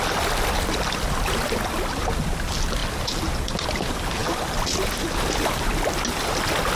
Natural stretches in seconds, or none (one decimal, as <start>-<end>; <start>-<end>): 0.0-4.2; 5.3-6.8